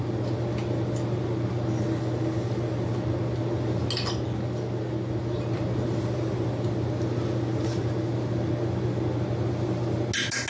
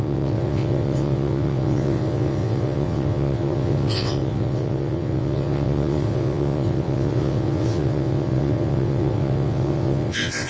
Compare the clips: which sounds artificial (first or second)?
second